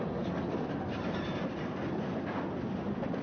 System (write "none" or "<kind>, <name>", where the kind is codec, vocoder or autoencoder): none